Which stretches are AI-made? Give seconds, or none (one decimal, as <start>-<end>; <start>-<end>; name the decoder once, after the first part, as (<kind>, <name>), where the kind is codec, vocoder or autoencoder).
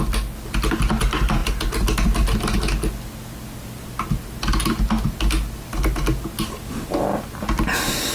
none